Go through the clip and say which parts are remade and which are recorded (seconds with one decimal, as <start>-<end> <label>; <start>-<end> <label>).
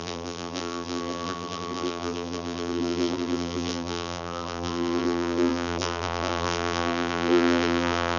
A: 0.0-8.2 remade